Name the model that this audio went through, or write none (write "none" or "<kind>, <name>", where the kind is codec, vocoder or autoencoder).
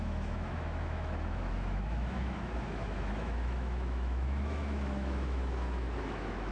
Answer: autoencoder, DAC-VAE